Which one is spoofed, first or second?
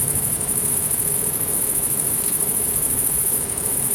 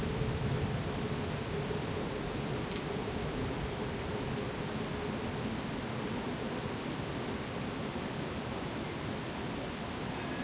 first